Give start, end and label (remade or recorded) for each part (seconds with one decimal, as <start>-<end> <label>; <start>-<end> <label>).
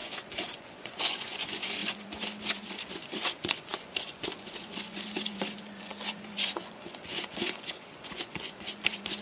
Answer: 0.0-9.2 remade